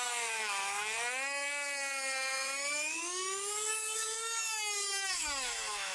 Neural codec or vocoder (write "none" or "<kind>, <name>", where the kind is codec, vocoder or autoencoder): autoencoder, DAC-VAE